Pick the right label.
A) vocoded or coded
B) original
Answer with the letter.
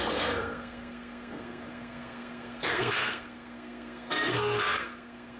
A